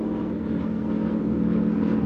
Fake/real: fake